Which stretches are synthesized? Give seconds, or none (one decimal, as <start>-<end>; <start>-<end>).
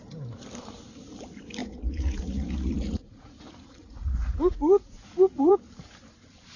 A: 1.6-5.6